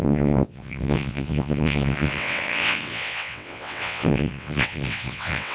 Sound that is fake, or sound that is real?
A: fake